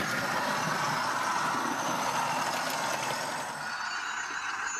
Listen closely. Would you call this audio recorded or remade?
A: recorded